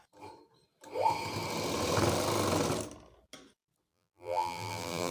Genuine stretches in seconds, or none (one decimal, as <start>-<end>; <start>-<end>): 0.0-3.9